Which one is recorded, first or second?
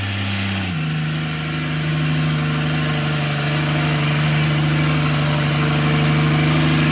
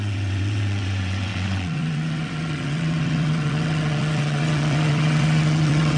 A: first